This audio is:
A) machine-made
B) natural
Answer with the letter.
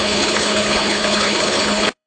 A